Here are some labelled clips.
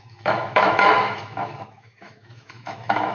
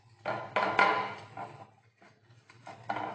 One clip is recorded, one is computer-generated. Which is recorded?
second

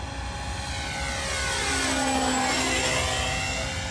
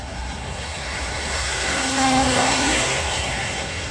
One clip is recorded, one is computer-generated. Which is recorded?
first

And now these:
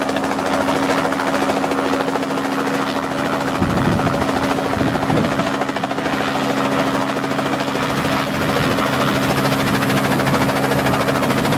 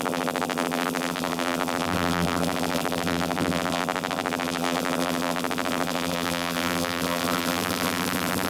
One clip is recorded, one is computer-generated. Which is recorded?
first